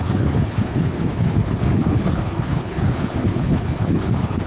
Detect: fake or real fake